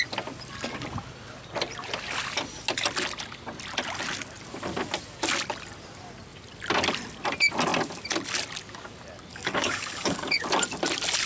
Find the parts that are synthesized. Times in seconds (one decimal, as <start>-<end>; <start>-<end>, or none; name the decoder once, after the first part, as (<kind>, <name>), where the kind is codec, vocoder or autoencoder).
9.3-10.3 (codec, DAC)